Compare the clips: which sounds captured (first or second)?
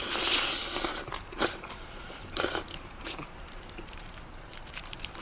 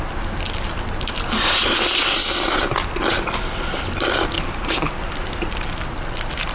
second